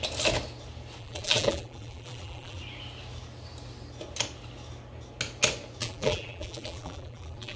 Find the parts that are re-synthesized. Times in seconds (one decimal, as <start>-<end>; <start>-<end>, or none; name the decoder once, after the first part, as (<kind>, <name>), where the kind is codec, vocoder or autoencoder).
1.0-2.6 (vocoder, BigVGAN v2); 5.8-7.6